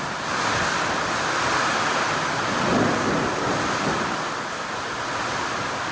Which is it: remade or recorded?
recorded